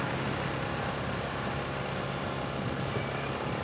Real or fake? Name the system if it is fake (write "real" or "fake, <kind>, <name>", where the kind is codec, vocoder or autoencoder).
real